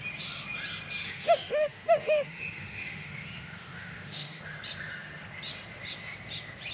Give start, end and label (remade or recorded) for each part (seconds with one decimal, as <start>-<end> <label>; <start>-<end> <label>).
0.0-1.0 recorded; 1.0-4.4 remade; 4.4-6.7 recorded